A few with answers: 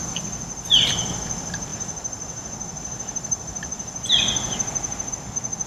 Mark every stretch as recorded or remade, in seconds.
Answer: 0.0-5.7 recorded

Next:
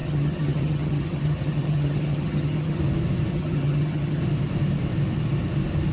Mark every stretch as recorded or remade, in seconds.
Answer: 0.0-2.8 remade; 2.8-3.3 recorded; 3.3-4.2 remade; 4.2-5.9 recorded

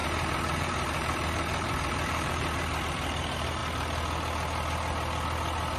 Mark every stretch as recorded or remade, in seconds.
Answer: 0.0-3.6 remade; 3.6-5.8 recorded

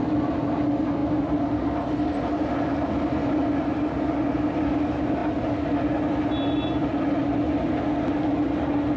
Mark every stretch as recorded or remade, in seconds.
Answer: 0.0-9.0 recorded

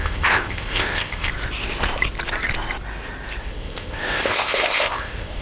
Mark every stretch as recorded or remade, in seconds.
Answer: 0.0-1.3 remade; 1.3-3.4 recorded; 3.4-5.4 remade

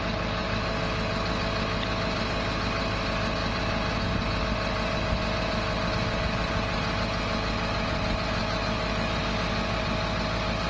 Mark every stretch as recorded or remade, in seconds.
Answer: 0.0-8.4 recorded; 8.4-9.2 remade; 9.2-10.7 recorded

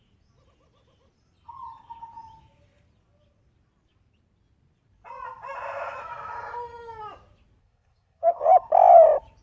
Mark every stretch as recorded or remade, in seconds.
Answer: 0.0-7.6 recorded; 7.6-8.4 remade; 8.4-9.4 recorded

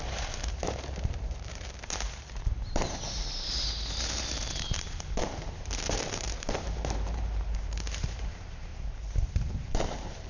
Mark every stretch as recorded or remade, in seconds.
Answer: 0.0-8.7 remade; 8.7-9.3 recorded; 9.3-10.3 remade